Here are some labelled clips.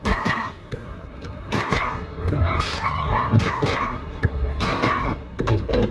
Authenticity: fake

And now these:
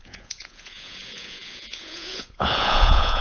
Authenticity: fake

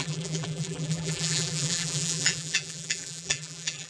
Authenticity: fake